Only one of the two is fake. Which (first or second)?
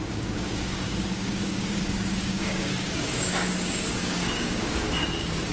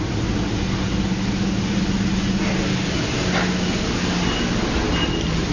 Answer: first